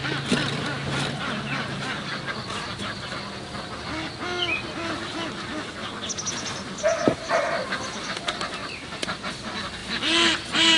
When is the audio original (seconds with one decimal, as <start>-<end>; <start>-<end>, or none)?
0.0-10.8